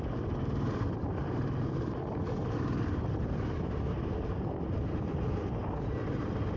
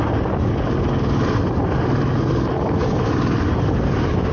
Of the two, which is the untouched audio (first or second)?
second